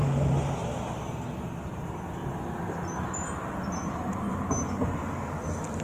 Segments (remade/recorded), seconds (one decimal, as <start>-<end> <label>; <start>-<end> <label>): 0.0-5.8 recorded